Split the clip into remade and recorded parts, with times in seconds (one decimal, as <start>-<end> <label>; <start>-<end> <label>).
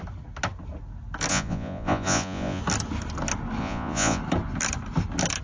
0.0-1.3 recorded; 1.3-2.6 remade; 2.6-3.6 recorded; 3.6-4.2 remade; 4.2-5.4 recorded